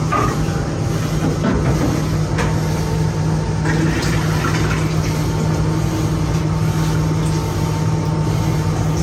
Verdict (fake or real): real